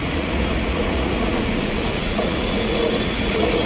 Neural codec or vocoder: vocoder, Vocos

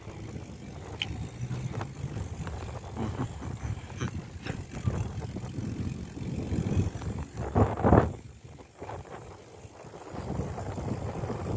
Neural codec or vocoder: none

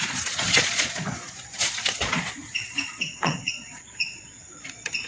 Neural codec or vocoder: vocoder, Vocos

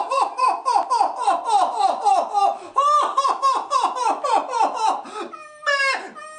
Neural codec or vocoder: none